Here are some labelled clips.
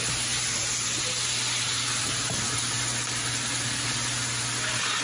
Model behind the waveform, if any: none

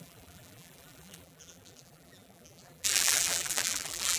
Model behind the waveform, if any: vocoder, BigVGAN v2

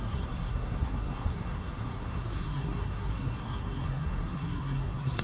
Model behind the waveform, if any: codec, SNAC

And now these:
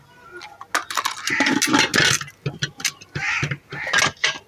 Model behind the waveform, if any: none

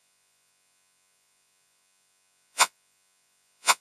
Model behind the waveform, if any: vocoder, Vocos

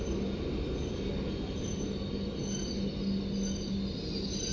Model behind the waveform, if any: none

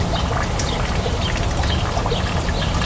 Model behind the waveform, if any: none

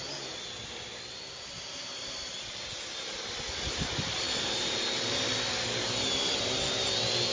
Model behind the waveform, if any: none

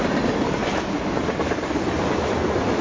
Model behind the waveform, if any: none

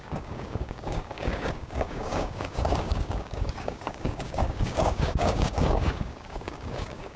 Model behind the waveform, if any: codec, DAC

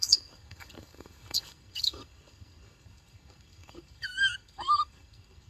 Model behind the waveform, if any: codec, SNAC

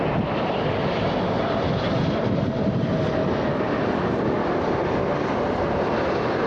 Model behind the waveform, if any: none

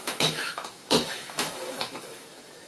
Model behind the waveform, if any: autoencoder, DAC-VAE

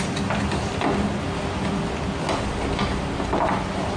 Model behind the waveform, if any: none